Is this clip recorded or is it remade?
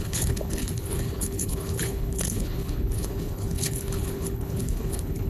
remade